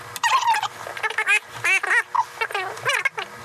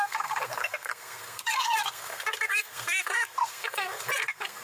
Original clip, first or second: first